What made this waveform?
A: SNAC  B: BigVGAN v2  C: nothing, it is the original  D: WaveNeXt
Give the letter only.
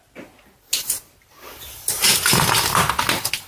C